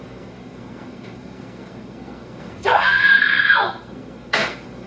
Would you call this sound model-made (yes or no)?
yes